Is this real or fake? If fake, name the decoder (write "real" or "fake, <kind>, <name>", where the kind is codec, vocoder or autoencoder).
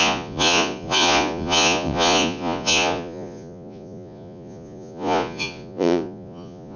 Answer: fake, vocoder, Vocos